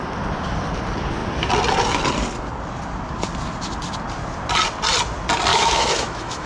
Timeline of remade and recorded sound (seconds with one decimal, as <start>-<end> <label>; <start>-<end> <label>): 0.0-5.5 recorded; 5.5-6.5 remade